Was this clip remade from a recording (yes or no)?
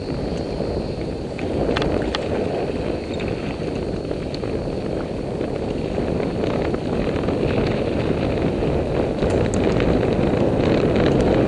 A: no